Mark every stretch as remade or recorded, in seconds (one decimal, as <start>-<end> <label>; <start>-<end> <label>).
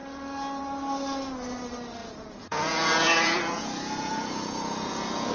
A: 0.0-2.0 recorded; 2.0-5.3 remade